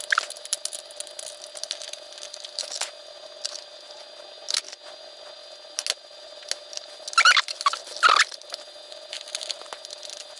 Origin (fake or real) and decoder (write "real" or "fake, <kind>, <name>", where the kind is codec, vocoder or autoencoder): real